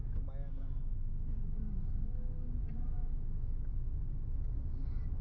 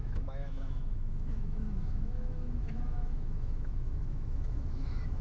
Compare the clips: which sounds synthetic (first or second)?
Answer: second